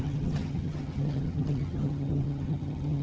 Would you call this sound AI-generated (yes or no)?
yes